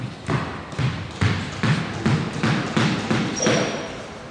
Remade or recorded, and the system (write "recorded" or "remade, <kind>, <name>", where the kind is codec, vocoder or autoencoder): recorded